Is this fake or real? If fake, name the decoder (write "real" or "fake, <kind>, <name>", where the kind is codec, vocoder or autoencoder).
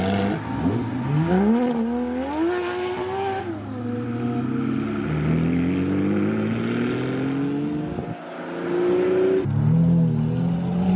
real